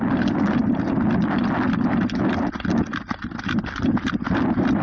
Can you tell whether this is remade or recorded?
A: recorded